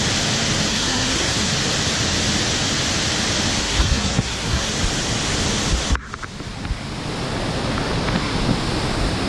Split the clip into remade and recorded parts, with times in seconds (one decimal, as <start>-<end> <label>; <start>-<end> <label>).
0.0-0.7 recorded; 0.7-1.5 remade; 1.5-3.6 recorded; 3.6-4.7 remade; 4.7-9.3 recorded